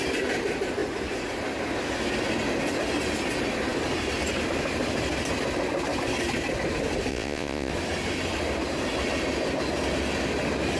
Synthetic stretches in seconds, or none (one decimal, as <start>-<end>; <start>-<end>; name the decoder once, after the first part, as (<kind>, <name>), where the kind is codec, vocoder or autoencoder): 7.1-7.7 (vocoder, Vocos)